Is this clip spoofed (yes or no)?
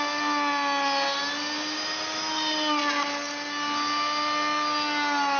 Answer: no